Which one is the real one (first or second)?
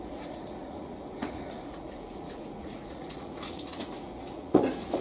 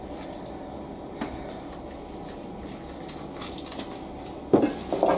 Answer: second